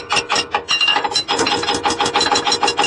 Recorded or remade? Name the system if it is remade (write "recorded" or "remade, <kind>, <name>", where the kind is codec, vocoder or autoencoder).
recorded